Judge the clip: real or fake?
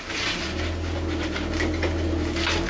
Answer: real